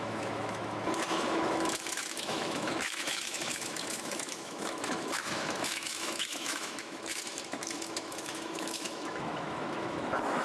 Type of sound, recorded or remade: remade